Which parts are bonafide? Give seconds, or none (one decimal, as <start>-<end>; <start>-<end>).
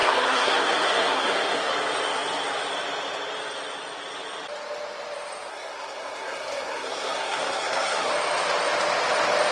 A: 1.7-5.5; 8.1-9.5